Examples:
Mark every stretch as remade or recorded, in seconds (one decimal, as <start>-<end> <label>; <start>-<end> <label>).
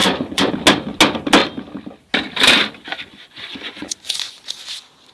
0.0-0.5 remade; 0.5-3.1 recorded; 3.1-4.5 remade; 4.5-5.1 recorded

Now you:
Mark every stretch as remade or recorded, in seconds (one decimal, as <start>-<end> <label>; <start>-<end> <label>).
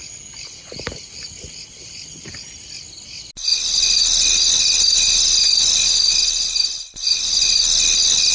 0.0-8.3 recorded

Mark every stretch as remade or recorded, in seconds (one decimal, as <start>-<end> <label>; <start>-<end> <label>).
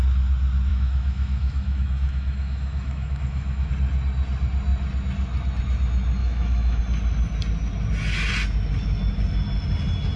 0.0-0.7 recorded; 0.7-3.7 remade; 3.7-6.2 recorded; 6.2-6.8 remade; 6.8-10.2 recorded